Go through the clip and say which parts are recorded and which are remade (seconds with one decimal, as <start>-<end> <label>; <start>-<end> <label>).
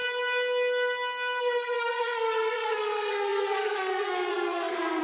0.0-1.4 recorded; 1.4-5.0 remade